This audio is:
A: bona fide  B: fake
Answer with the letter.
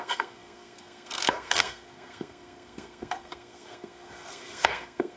B